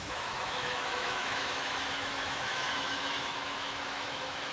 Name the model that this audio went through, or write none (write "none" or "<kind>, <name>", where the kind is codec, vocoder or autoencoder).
autoencoder, DAC-VAE